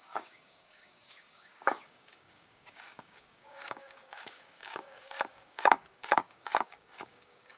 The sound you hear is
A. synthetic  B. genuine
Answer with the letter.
A